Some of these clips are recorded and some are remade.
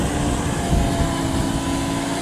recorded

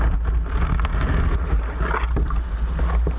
recorded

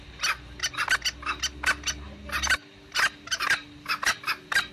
recorded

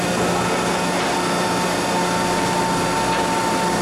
recorded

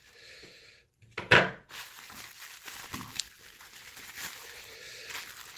recorded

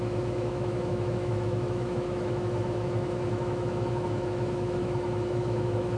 remade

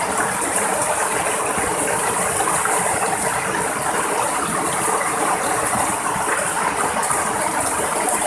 recorded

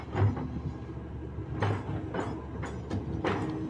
recorded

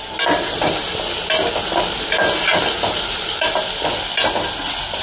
recorded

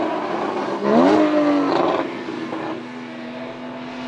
recorded